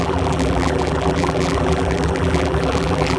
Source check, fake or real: fake